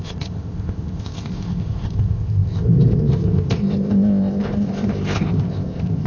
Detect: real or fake fake